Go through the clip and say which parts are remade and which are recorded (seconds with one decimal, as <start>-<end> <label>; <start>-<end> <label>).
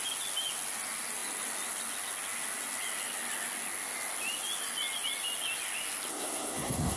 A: 0.0-6.1 recorded; 6.1-7.0 remade